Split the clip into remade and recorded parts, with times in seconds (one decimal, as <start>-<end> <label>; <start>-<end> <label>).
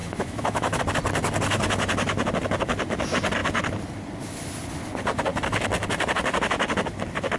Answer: 0.0-0.8 remade; 0.8-7.4 recorded